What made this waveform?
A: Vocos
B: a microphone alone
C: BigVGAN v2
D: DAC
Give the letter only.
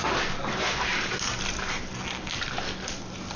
B